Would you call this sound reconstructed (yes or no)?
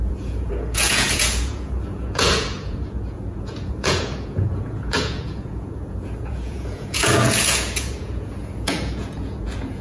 yes